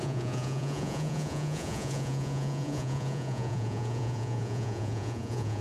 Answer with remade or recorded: remade